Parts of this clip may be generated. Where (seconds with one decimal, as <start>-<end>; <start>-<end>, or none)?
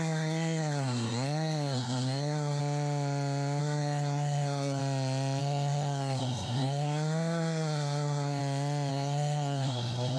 0.0-2.6; 3.6-4.8; 5.4-8.4; 8.9-10.2